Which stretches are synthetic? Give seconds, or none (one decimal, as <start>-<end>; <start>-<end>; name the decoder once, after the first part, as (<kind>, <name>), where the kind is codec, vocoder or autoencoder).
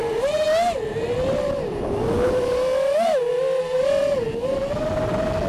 none